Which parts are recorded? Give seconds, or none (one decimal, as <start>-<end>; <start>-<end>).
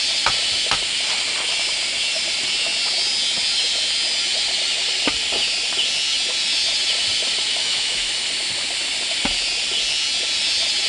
0.0-7.6; 8.1-10.9